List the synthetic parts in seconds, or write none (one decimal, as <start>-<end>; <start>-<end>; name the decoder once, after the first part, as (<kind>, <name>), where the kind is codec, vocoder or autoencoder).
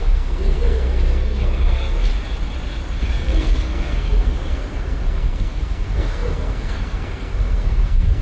0.0-2.1 (codec, SNAC); 3.0-8.2